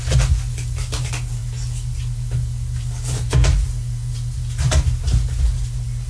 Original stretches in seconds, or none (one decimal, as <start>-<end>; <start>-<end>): 0.0-6.1